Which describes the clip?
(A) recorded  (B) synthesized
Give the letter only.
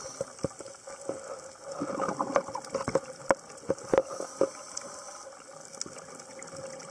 A